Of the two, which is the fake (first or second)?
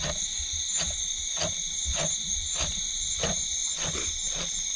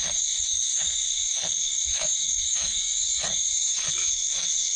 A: second